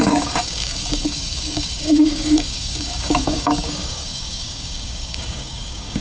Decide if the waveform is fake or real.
fake